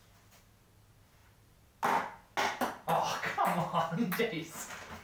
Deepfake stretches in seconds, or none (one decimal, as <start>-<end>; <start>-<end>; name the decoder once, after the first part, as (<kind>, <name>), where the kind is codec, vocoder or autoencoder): none